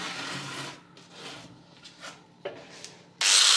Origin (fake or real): real